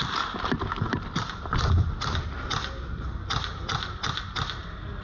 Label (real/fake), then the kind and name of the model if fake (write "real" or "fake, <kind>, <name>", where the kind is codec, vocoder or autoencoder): real